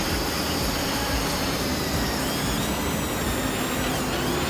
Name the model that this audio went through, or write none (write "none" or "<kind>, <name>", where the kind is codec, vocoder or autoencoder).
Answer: none